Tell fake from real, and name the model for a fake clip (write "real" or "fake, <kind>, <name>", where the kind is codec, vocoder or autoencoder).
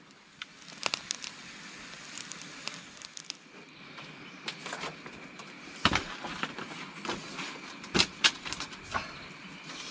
real